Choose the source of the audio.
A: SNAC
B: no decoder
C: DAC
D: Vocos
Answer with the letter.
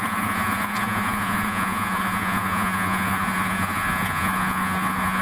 D